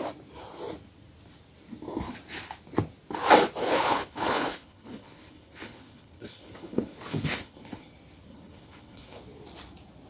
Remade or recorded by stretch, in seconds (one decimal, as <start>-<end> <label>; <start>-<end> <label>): 0.0-3.6 recorded; 3.6-7.9 remade; 7.9-8.3 recorded; 8.3-9.2 remade; 9.2-10.1 recorded